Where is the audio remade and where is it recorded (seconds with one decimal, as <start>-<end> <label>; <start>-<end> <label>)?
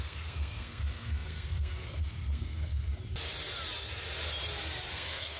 0.0-2.9 remade; 2.9-4.9 recorded; 4.9-5.4 remade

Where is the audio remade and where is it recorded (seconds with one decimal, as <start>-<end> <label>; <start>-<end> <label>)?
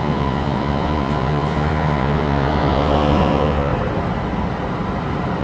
0.0-3.7 remade; 3.7-5.4 recorded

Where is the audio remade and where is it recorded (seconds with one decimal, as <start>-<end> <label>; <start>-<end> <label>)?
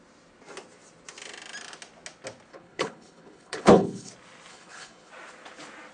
0.0-2.5 recorded; 2.5-4.1 remade; 4.1-4.5 recorded; 4.5-5.1 remade; 5.1-5.9 recorded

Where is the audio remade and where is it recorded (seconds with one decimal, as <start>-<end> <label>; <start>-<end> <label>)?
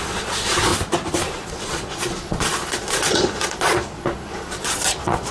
0.0-0.7 remade; 0.7-1.2 recorded; 1.2-5.3 remade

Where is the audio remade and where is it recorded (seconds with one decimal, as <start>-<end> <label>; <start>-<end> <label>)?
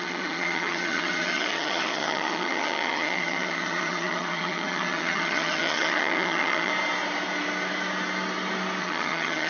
0.0-6.7 remade; 6.7-8.8 recorded; 8.8-9.5 remade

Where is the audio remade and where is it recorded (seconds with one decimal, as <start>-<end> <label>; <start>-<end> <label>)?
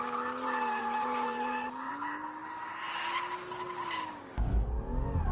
0.0-0.8 recorded; 0.8-1.9 remade; 1.9-5.3 recorded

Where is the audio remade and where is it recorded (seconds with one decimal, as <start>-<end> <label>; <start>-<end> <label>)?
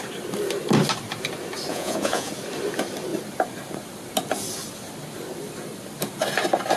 0.0-1.7 recorded; 1.7-2.3 remade; 2.3-6.8 recorded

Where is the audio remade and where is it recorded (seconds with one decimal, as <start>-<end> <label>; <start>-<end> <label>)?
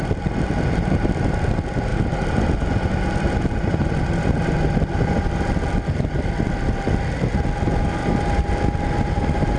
0.0-8.0 recorded; 8.0-8.5 remade; 8.5-9.6 recorded